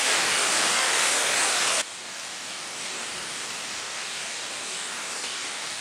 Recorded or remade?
remade